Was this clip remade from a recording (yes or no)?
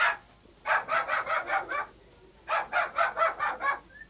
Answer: no